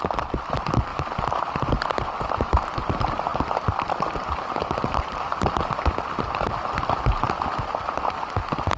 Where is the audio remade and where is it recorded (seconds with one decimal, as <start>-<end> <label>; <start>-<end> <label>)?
0.0-0.9 remade; 0.9-2.4 recorded; 2.4-8.8 remade